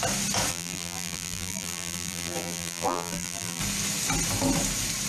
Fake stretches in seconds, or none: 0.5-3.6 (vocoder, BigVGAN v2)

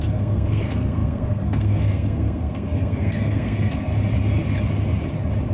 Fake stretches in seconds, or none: 0.0-3.9 (codec, SNAC)

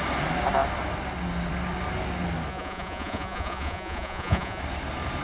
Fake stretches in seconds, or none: 2.5-4.6 (vocoder, Vocos)

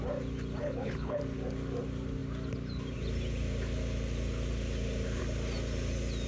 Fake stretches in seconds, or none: 0.6-1.2 (codec, HILCodec)

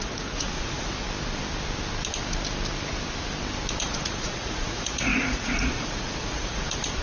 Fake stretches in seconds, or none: 0.0-0.9 (vocoder, Vocos); 3.8-7.0

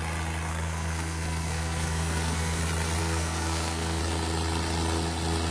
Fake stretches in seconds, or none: 0.5-2.6 (codec, SNAC); 3.0-4.0

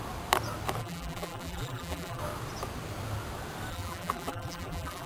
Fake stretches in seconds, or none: 0.8-2.2 (vocoder, BigVGAN v2); 3.7-5.1